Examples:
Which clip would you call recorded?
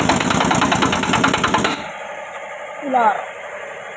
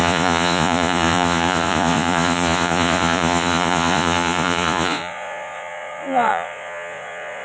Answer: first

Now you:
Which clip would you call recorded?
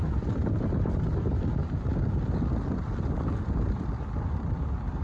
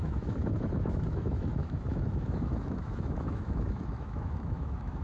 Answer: first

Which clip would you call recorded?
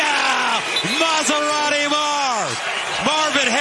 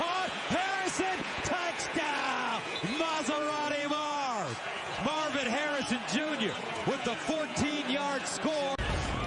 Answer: first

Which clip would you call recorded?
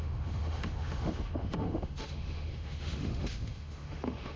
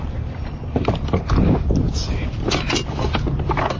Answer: second